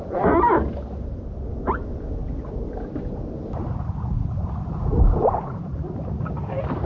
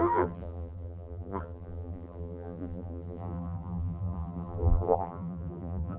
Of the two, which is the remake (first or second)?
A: second